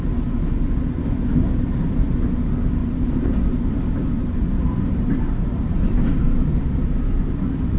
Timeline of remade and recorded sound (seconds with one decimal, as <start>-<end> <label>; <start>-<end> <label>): 0.0-2.8 recorded; 2.8-7.8 remade